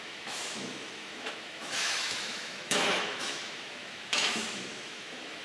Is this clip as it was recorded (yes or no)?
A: no